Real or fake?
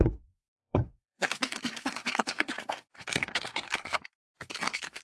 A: fake